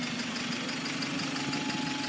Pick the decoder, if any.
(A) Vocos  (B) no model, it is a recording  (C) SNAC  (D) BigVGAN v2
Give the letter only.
B